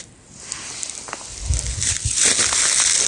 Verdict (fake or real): real